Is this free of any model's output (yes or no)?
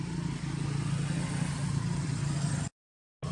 yes